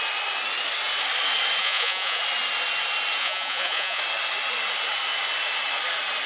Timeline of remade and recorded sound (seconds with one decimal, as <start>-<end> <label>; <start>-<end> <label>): 0.0-1.6 recorded; 1.6-2.2 remade; 2.2-3.2 recorded; 3.2-4.0 remade; 4.0-6.3 recorded